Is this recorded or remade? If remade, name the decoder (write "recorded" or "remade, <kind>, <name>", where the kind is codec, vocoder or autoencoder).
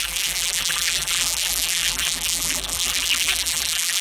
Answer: remade, vocoder, BigVGAN v2